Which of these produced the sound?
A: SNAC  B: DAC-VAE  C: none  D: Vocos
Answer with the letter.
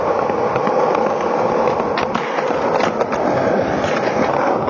C